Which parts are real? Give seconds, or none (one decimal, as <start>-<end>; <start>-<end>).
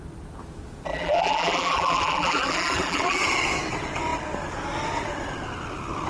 0.0-0.9; 3.2-6.1